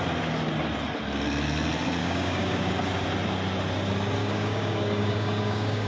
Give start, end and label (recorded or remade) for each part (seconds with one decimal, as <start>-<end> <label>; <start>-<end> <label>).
0.0-2.0 recorded; 2.0-2.7 remade; 2.7-4.2 recorded; 4.2-5.9 remade